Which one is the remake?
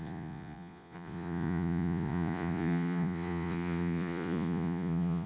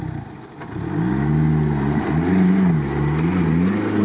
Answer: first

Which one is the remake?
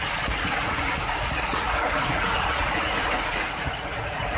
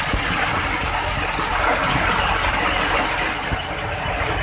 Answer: first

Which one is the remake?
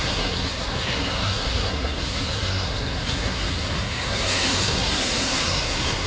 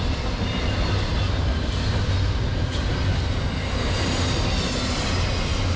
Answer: first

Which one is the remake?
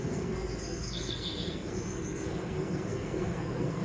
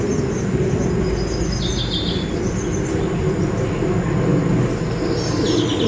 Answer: first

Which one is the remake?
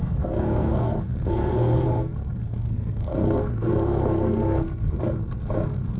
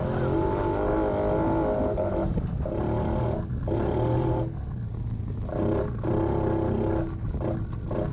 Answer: first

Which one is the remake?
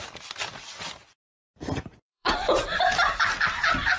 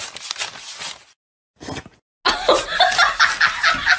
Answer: first